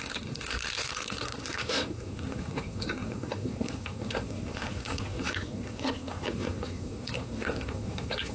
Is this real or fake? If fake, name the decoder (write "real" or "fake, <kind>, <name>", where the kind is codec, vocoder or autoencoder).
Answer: fake, codec, SNAC